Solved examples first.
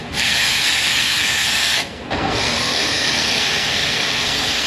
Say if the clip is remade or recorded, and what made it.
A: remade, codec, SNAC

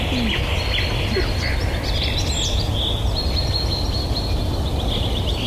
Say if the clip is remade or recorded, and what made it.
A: recorded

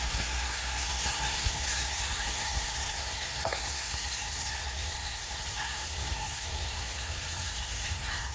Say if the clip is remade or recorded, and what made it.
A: remade, codec, SNAC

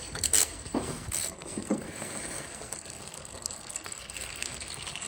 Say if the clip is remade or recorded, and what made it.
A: remade, codec, SNAC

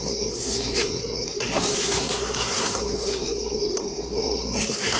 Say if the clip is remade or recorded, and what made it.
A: remade, codec, SNAC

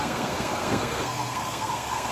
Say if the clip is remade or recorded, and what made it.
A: remade, codec, SNAC